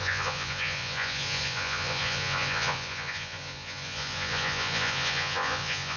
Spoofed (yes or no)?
yes